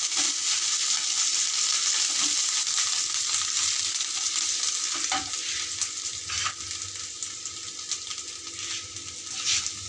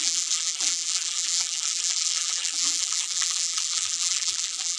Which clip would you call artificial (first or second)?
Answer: second